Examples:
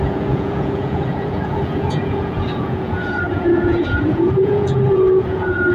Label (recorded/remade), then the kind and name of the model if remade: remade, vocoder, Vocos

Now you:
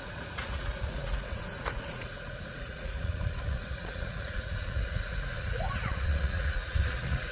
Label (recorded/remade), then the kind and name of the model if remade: remade, vocoder, Vocos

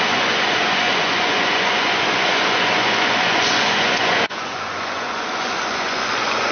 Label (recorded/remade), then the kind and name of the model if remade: remade, vocoder, Vocos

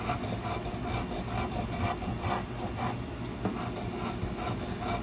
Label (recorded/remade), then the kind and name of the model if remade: recorded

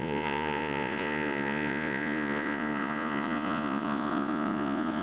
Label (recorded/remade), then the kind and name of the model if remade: remade, vocoder, Vocos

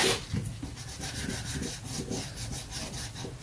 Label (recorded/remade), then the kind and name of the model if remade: recorded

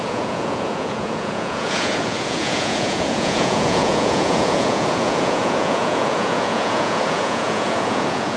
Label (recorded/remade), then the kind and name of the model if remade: remade, vocoder, Vocos